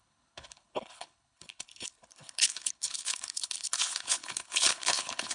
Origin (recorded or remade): remade